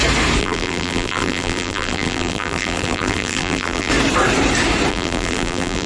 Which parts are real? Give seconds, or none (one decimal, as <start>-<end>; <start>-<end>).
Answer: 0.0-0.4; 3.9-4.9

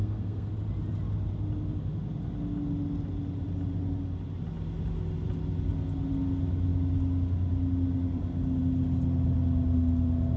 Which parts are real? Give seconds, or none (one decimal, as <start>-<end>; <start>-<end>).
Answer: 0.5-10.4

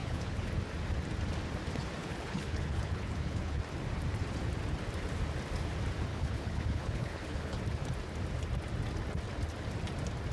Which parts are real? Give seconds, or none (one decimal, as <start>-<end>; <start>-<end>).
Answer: 0.5-2.0; 3.6-6.1; 7.6-10.3